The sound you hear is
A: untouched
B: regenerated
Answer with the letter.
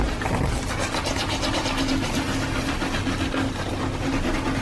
A